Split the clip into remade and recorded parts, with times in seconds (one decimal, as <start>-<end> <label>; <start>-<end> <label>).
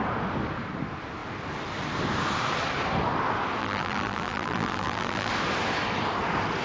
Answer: 0.0-3.6 recorded; 3.6-5.3 remade; 5.3-6.6 recorded